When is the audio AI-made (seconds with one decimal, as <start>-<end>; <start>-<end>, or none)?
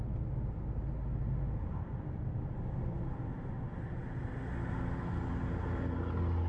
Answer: none